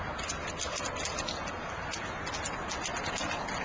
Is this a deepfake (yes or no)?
no